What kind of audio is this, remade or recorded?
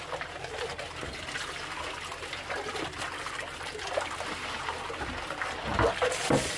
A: recorded